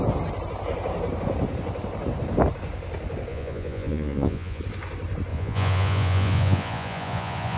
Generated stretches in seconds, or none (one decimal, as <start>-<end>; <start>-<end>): 3.3-4.6; 5.3-7.6